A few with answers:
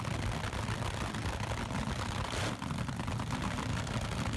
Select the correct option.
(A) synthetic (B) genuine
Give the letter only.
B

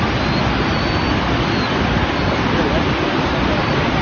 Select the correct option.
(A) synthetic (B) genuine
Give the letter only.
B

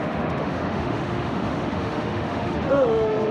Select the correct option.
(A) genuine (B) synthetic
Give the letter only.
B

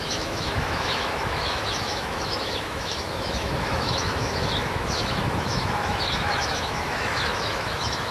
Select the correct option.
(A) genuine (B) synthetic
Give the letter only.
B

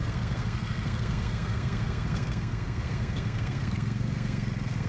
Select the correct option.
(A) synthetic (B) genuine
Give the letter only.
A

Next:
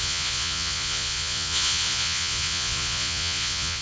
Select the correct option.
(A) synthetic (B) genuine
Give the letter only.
A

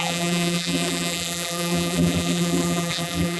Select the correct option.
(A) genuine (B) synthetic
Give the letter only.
B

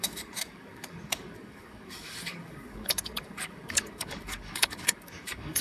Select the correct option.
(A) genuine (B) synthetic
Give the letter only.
B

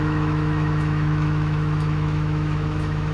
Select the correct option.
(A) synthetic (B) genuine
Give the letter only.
A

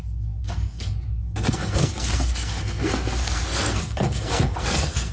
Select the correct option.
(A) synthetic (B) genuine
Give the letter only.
A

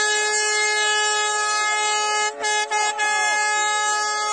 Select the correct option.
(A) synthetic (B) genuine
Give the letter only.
B